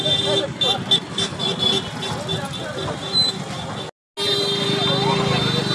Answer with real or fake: real